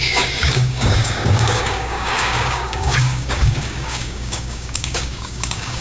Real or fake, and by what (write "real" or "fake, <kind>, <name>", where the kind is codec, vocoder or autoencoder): fake, codec, DAC